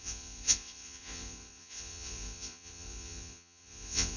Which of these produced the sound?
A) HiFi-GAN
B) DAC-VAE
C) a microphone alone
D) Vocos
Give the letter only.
D